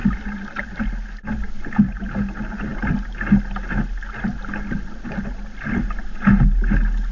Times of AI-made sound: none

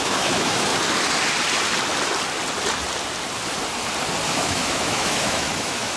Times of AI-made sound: 0.0-0.7; 4.3-6.0

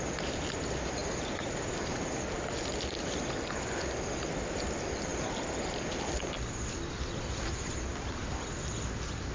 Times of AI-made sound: none

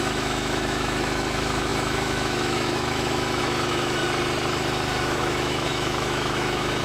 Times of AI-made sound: 0.0-4.0; 5.0-6.8

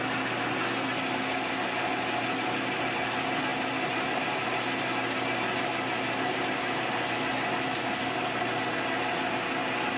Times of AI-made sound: none

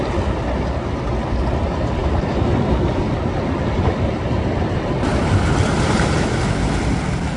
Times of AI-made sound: none